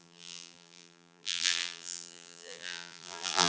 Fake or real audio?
fake